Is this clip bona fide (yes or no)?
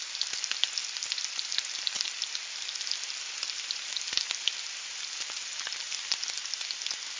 yes